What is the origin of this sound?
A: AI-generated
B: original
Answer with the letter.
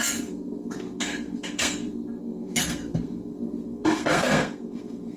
A